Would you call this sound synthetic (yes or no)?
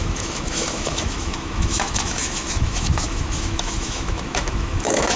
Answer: yes